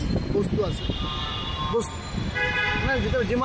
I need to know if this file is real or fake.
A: real